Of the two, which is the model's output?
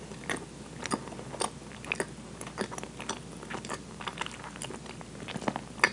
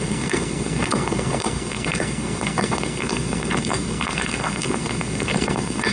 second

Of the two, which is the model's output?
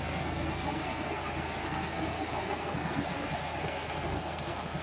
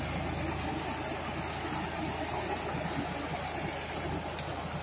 first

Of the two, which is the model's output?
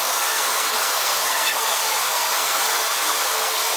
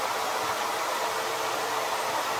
first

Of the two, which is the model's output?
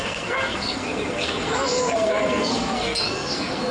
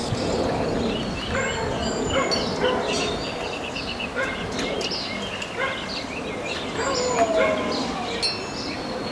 first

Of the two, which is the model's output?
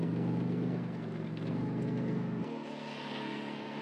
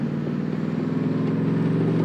first